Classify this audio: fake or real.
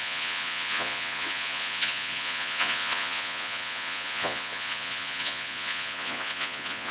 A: fake